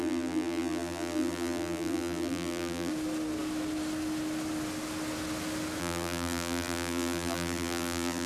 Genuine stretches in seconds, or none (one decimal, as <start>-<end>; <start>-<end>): 2.9-5.8